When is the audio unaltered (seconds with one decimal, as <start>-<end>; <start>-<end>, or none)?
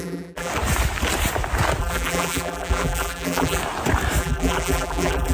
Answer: 0.5-1.8; 3.6-4.2